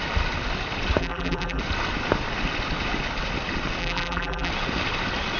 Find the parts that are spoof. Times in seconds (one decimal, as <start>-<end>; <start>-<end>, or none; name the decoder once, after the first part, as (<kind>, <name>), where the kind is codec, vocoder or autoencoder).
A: 1.0-1.6 (vocoder, BigVGAN v2); 3.8-4.5